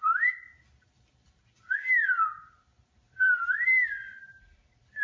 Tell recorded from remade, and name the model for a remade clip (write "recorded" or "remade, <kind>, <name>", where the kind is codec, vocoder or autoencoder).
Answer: remade, vocoder, BigVGAN v2